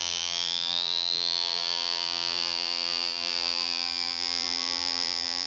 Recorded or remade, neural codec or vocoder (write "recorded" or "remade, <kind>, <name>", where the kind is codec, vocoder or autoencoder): remade, vocoder, BigVGAN v2